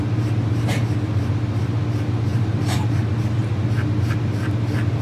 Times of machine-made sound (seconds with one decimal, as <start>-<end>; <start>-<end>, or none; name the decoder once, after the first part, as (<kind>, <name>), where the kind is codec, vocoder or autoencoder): 2.3-2.8 (vocoder, BigVGAN v2)